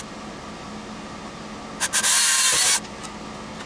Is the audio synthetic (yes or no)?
no